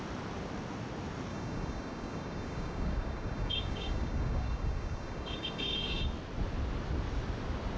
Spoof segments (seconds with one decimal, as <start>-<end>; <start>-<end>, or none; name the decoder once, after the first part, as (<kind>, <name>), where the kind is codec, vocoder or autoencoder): 1.3-6.0 (codec, DAC)